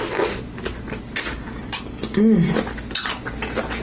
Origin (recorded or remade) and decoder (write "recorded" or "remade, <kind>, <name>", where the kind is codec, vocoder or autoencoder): recorded